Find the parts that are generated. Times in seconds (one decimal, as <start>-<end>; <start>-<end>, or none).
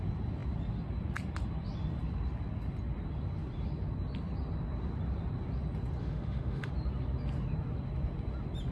6.0-6.7